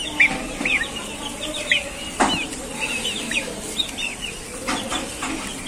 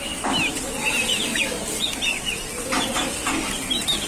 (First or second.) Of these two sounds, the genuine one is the second